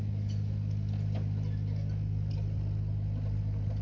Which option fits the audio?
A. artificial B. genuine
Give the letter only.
B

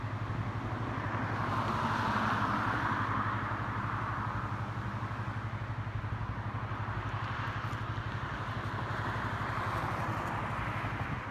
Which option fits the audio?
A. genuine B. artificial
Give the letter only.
A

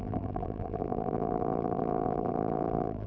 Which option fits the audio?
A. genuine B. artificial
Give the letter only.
B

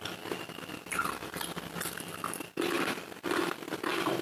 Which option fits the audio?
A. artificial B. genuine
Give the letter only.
B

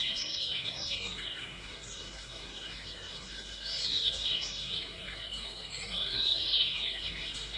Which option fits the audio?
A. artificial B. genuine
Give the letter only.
A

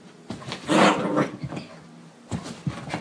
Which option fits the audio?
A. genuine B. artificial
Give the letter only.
A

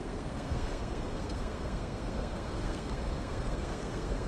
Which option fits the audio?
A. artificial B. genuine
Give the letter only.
A